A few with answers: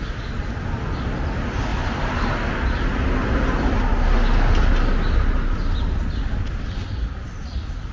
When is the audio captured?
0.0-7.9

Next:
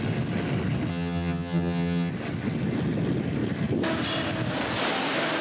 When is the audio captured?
0.0-0.9; 2.1-5.4

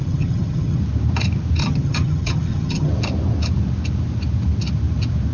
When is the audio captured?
0.8-1.6; 2.9-5.3

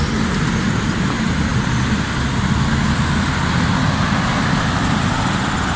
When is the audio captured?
0.0-5.8

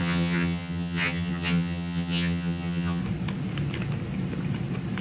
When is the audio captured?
3.0-5.0